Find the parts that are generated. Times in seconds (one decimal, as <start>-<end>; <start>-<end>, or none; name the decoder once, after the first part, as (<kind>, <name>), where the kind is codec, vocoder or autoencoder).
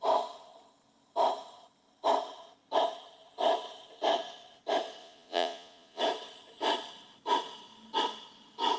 5.0-6.0 (vocoder, Vocos)